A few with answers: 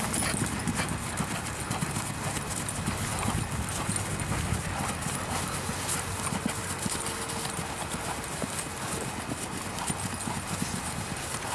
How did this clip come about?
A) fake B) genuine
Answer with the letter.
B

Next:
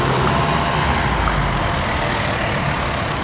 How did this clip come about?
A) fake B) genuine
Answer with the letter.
B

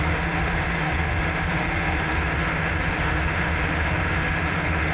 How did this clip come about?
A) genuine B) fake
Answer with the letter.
B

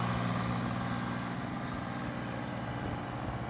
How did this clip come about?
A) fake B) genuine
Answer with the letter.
B